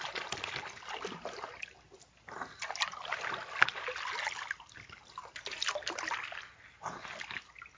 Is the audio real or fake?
real